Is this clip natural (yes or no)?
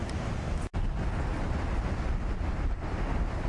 yes